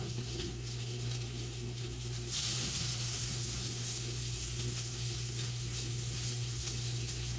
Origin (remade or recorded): remade